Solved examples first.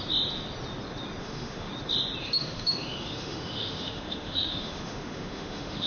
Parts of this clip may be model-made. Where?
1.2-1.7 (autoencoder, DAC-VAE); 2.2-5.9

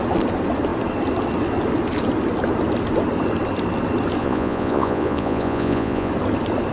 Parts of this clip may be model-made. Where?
4.2-6.1 (vocoder, Vocos)

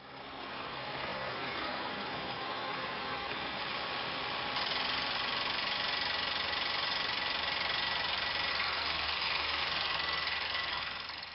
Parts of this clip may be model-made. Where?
0.0-3.6 (codec, SNAC); 8.5-11.3

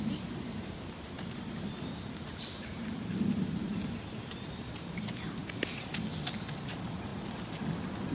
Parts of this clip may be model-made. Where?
0.0-5.4 (vocoder, BigVGAN v2); 6.6-7.1

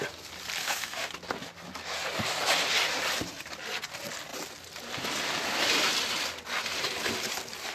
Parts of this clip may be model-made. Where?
0.6-1.1 (autoencoder, DAC-VAE)

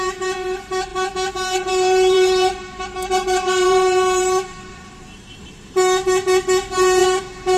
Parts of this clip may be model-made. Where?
0.0-7.0 (vocoder, BigVGAN v2)